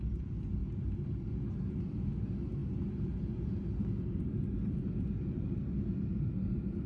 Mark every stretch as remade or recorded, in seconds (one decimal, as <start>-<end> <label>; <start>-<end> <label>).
0.0-6.9 recorded